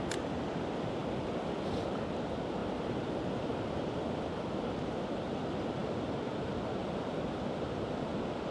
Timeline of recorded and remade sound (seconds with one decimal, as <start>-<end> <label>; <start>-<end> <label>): 0.0-1.0 recorded; 1.0-2.2 remade; 2.2-2.6 recorded; 2.6-4.6 remade; 4.6-6.8 recorded; 6.8-8.1 remade; 8.1-8.5 recorded